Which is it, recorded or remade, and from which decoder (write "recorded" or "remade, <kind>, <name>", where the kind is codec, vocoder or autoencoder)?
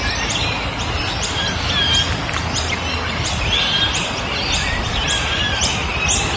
recorded